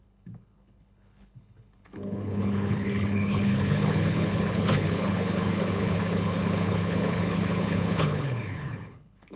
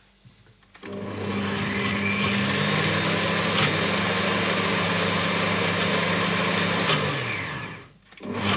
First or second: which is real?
second